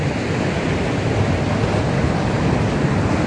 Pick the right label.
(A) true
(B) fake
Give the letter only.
A